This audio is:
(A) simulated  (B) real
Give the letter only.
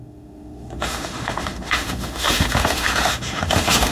A